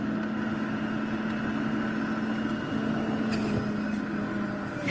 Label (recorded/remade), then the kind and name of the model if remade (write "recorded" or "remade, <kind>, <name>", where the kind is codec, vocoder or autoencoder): recorded